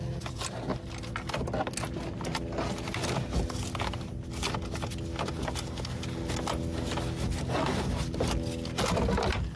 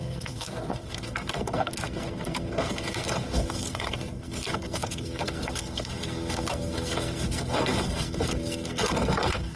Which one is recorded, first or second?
first